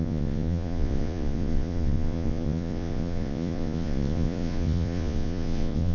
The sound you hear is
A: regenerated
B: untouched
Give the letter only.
A